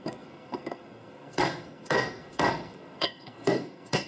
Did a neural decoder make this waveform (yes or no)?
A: yes